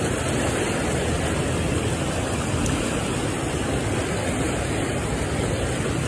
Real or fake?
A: real